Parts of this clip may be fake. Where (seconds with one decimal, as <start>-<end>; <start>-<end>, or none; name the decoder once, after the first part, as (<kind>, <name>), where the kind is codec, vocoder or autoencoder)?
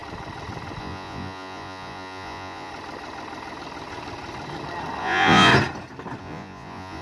0.8-2.7 (vocoder, Vocos); 5.0-5.5; 6.2-7.0